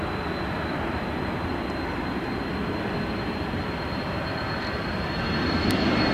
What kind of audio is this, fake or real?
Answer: fake